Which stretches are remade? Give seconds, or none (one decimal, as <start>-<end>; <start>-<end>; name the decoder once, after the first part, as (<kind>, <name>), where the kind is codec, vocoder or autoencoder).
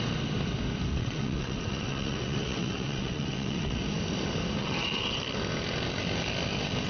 0.9-3.8 (vocoder, WaveNeXt); 4.6-5.2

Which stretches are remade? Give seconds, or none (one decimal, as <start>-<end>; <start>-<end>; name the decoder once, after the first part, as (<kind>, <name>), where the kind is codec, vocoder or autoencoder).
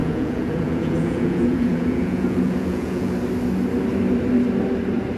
0.0-3.1 (vocoder, Vocos)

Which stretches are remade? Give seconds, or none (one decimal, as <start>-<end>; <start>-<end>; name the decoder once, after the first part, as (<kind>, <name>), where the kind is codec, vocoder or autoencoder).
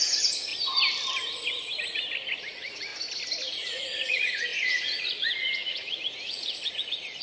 0.0-0.5 (vocoder, Vocos); 2.4-2.9; 3.5-7.2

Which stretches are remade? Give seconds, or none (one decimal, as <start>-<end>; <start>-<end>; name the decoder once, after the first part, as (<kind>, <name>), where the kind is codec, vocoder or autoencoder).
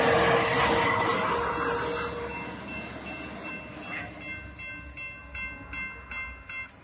none